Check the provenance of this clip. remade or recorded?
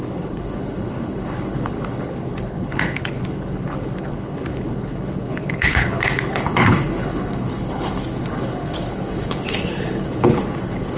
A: remade